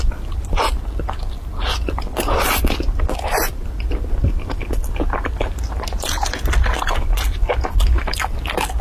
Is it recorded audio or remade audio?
recorded